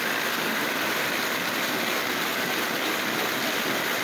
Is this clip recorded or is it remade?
recorded